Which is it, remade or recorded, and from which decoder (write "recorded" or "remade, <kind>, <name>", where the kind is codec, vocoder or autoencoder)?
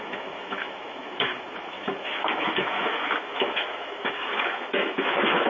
remade, autoencoder, DAC-VAE